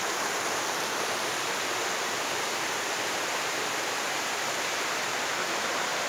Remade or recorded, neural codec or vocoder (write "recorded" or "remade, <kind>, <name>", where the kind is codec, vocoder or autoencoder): remade, vocoder, BigVGAN v2